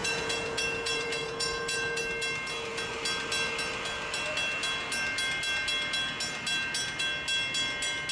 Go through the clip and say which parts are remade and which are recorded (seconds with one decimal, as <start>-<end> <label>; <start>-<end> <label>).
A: 0.0-2.0 remade; 2.0-8.1 recorded